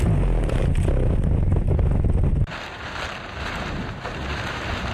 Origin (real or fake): fake